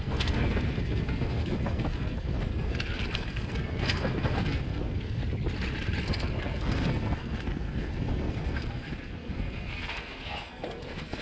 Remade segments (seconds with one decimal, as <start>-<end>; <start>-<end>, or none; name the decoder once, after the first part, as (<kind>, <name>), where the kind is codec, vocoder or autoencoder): 0.0-5.2 (codec, SNAC); 6.0-11.2